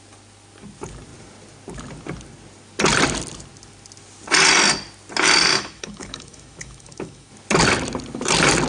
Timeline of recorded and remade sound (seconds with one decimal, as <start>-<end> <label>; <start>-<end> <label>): 0.0-5.5 recorded; 5.5-7.3 remade; 7.3-8.7 recorded